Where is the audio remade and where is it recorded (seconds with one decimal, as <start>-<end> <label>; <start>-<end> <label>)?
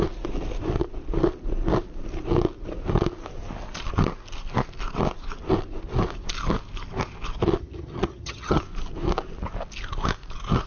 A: 0.0-7.6 recorded; 7.6-8.6 remade; 8.6-10.7 recorded